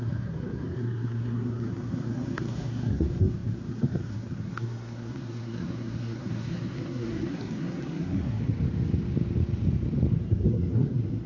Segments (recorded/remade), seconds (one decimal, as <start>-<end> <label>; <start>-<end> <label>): 0.0-8.4 remade; 8.4-10.1 recorded; 10.1-11.3 remade

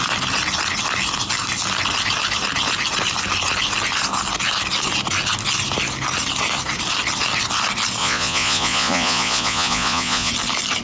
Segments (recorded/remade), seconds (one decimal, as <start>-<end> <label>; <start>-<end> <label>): 0.0-8.0 recorded; 8.0-10.3 remade; 10.3-10.8 recorded

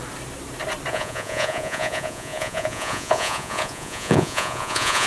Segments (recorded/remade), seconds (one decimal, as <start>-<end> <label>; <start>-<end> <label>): 0.0-0.9 recorded; 0.9-5.1 remade

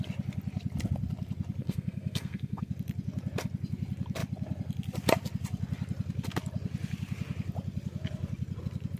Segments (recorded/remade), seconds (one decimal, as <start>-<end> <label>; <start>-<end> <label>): 0.0-1.6 recorded; 1.6-2.7 remade; 2.7-9.0 recorded

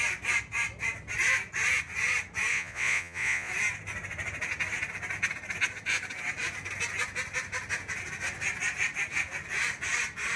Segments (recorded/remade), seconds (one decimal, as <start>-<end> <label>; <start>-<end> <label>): 0.0-2.5 recorded; 2.5-3.5 remade; 3.5-10.4 recorded

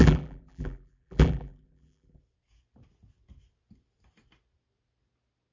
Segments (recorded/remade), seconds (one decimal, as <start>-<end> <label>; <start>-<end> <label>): 0.0-2.2 remade; 2.2-5.5 recorded

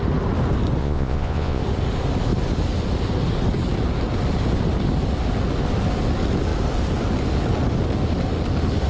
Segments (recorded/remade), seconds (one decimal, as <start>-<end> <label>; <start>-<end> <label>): 0.0-0.8 recorded; 0.8-1.6 remade; 1.6-8.9 recorded

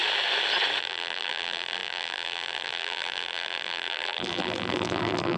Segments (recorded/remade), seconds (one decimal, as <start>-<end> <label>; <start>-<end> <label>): 0.0-0.8 recorded; 0.8-5.4 remade